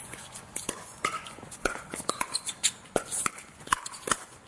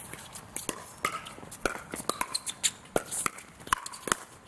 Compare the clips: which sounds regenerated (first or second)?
first